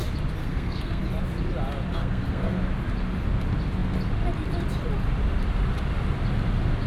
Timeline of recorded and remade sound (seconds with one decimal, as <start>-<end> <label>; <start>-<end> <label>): 0.0-0.4 recorded; 0.4-1.0 remade; 1.0-1.9 recorded; 1.9-2.5 remade; 2.5-6.9 recorded